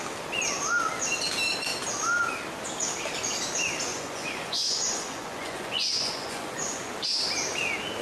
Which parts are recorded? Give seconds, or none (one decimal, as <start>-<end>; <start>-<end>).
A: 0.0-3.9; 6.9-8.0